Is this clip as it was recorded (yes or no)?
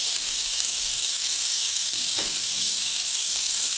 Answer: no